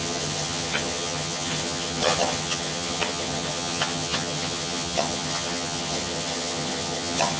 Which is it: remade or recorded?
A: remade